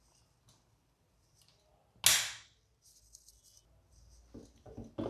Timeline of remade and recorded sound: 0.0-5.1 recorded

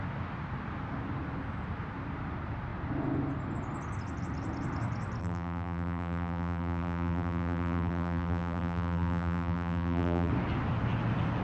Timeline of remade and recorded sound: 0.0-5.2 recorded; 5.2-10.3 remade; 10.3-11.4 recorded

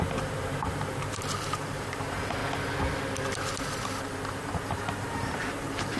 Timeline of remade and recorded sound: 0.0-2.4 remade; 2.4-4.0 recorded; 4.0-6.0 remade

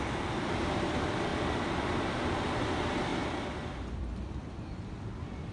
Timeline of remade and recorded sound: 0.0-5.5 remade

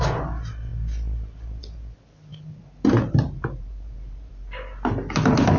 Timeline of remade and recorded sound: 0.0-2.3 recorded; 2.3-4.3 remade; 4.3-5.6 recorded

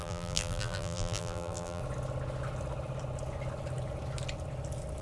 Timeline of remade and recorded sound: 0.0-1.8 remade; 1.8-5.0 recorded

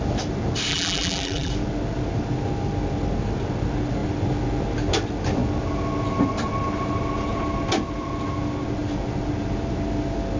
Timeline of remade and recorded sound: 0.0-0.7 recorded; 0.7-1.5 remade; 1.5-10.4 recorded

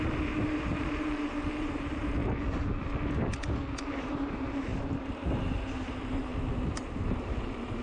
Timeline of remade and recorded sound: 0.0-2.2 remade; 2.2-3.9 recorded; 3.9-7.8 remade